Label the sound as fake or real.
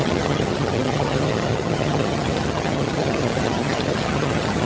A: fake